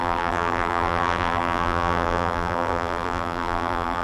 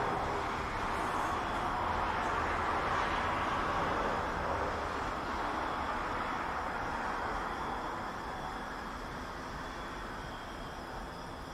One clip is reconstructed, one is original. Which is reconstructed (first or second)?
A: first